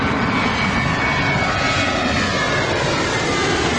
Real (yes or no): yes